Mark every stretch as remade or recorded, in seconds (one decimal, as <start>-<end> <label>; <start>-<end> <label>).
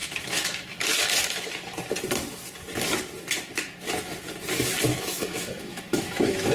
0.0-1.5 remade; 1.5-4.9 recorded; 4.9-6.5 remade